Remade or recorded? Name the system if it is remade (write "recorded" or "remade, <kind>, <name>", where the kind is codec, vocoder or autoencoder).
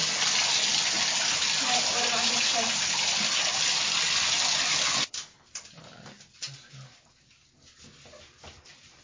recorded